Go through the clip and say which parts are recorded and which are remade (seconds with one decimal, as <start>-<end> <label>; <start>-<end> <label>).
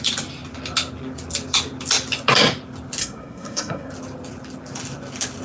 0.0-3.0 recorded; 3.0-3.9 remade; 3.9-5.4 recorded